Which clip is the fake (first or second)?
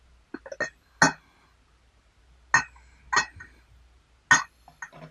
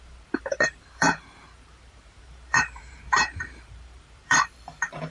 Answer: second